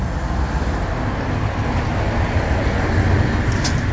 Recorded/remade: recorded